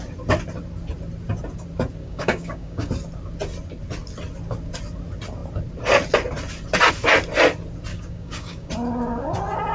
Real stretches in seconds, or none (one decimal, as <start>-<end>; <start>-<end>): 0.0-2.0; 2.9-7.9; 8.7-9.7